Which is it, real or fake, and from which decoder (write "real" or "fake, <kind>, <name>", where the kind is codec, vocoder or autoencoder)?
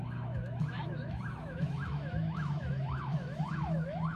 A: fake, autoencoder, DAC-VAE